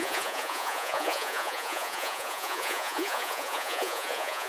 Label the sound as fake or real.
fake